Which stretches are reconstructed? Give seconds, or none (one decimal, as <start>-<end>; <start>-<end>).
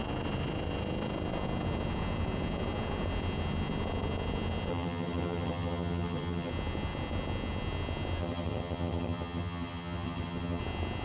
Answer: 4.7-6.5; 8.2-10.6